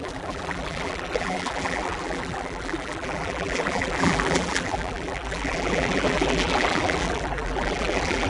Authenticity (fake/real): fake